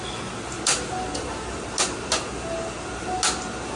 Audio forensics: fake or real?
real